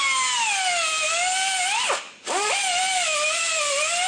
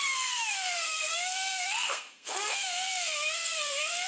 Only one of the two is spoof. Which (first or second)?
second